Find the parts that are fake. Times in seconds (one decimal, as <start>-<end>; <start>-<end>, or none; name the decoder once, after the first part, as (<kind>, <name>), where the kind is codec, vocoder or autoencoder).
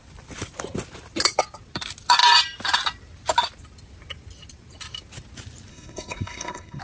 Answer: 5.7-6.8 (codec, SNAC)